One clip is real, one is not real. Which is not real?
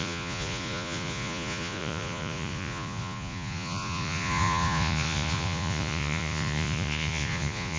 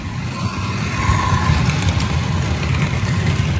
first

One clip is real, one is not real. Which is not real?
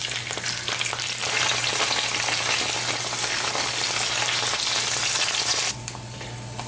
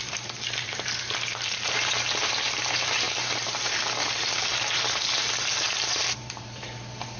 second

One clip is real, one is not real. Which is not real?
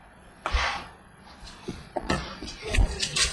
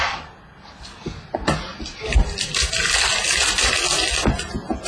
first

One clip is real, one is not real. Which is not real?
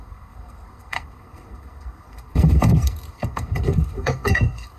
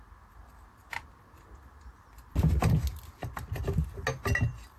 first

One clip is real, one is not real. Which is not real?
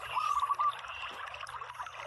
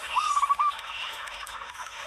second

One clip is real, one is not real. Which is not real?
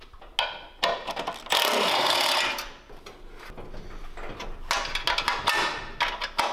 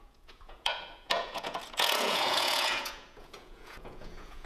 second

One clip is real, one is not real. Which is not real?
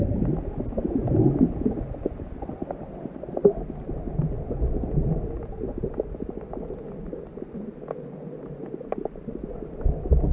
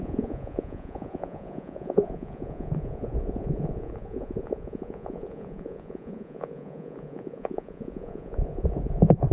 second